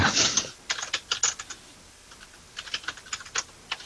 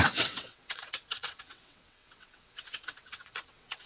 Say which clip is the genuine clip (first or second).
first